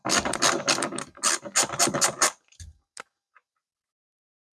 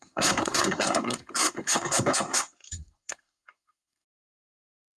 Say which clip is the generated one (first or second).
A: second